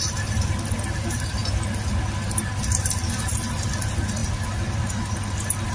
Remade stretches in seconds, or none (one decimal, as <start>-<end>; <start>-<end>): none